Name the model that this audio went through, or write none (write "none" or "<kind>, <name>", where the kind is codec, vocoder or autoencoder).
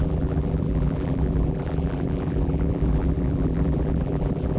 vocoder, BigVGAN v2